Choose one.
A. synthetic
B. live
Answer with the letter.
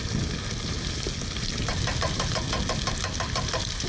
B